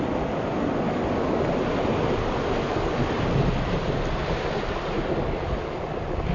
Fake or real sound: real